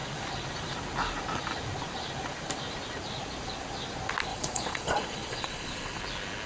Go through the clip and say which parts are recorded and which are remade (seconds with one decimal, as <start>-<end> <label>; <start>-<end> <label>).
0.0-4.3 recorded; 4.3-6.0 remade; 6.0-6.5 recorded